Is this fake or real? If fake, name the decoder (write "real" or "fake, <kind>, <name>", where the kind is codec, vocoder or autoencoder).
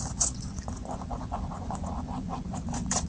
fake, vocoder, Vocos